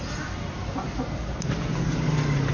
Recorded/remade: recorded